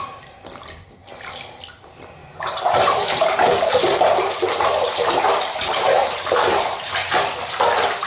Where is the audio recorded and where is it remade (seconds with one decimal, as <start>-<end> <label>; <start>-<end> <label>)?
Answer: 0.0-2.2 recorded; 2.2-6.9 remade; 6.9-8.1 recorded